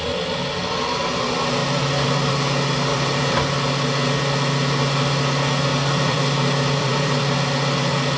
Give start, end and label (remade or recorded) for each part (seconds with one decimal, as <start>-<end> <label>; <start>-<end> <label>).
0.0-1.6 recorded; 1.6-2.3 remade; 2.3-2.9 recorded; 2.9-3.4 remade; 3.4-5.7 recorded; 5.7-7.2 remade; 7.2-8.2 recorded